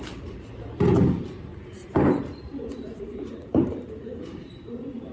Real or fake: fake